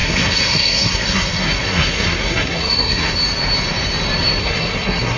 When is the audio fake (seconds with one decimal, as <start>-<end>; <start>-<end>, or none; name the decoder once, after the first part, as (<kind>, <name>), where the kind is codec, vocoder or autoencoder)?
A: 0.0-3.1 (codec, SNAC); 4.4-5.2